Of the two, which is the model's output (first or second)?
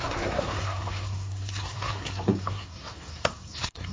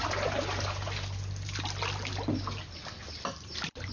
first